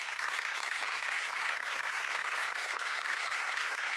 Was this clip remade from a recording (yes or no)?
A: yes